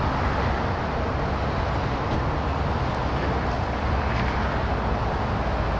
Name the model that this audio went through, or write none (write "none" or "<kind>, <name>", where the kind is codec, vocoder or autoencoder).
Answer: none